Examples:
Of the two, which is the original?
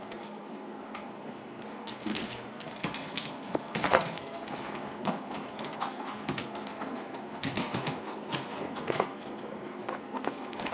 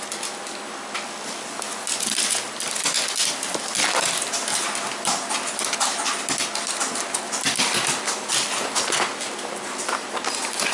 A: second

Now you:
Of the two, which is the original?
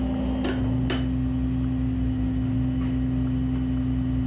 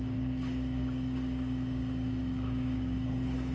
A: first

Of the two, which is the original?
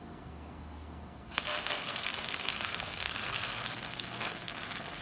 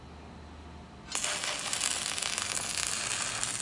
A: second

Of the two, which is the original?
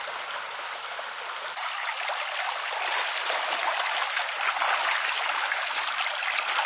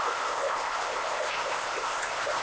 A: first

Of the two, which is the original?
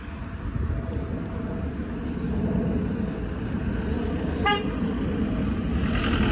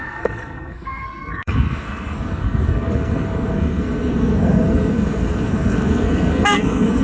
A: first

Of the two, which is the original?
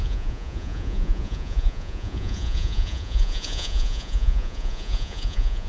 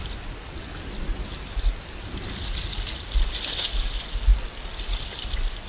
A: second